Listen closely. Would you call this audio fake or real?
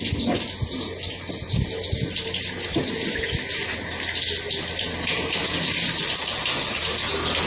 real